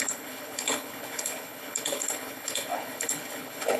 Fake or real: fake